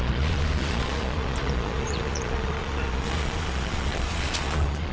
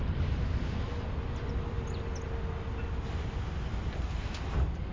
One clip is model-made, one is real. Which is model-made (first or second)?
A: first